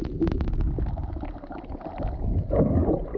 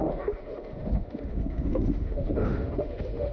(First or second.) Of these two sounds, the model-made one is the second